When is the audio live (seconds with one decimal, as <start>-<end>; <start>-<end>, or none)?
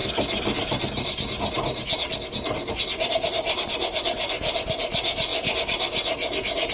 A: 0.0-6.7